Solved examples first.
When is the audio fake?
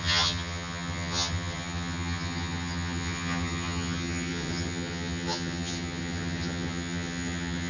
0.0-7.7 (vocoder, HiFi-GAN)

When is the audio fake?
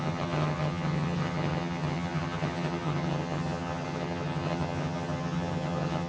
0.0-6.1 (vocoder, HiFi-GAN)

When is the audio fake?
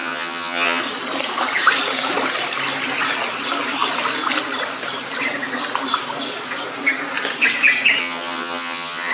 0.0-0.8 (vocoder, HiFi-GAN); 8.0-9.1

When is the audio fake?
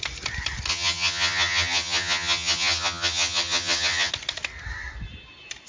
0.7-4.1 (vocoder, HiFi-GAN)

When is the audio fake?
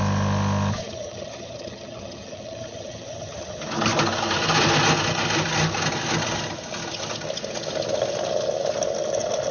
0.8-3.6 (vocoder, HiFi-GAN)